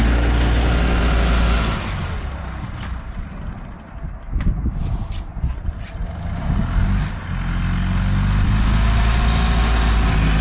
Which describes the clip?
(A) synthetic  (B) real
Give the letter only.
B